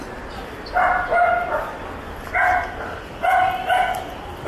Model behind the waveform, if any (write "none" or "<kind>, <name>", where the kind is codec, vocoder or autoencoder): none